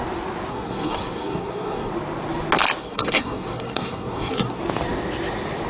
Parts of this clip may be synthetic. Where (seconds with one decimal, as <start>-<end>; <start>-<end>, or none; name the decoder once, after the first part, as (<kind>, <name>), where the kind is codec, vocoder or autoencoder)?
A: 0.5-1.9 (codec, SNAC); 2.8-4.6